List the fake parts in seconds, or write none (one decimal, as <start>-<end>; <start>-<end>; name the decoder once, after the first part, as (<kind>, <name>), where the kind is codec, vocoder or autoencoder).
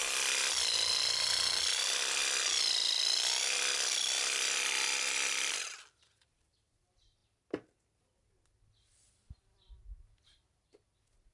none